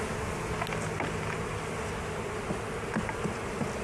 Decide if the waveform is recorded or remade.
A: recorded